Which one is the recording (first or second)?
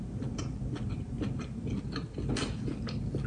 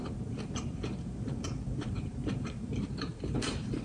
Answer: first